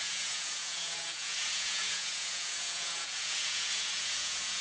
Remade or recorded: remade